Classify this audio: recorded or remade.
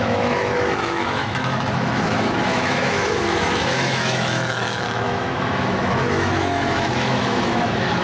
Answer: remade